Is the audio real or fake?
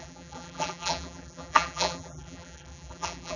fake